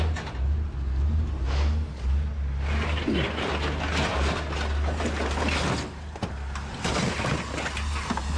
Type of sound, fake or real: real